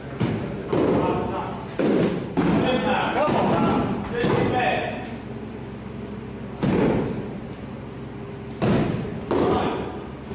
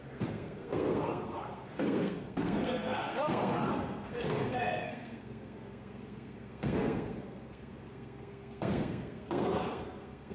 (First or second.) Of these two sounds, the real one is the first